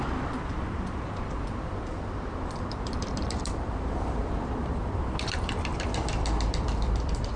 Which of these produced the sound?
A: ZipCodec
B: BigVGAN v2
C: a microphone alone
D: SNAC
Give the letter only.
B